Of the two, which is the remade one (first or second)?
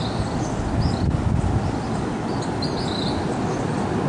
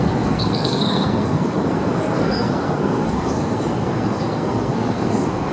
second